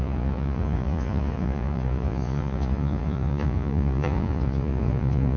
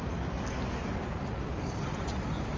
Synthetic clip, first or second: first